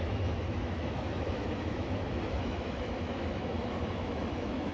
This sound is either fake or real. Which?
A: fake